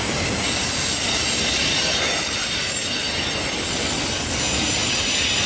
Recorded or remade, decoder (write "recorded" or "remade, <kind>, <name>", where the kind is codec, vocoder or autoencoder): recorded